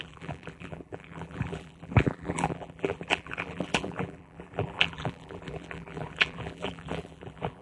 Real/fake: fake